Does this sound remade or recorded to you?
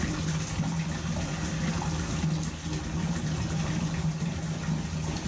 recorded